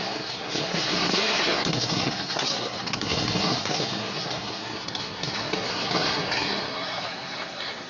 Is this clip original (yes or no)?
no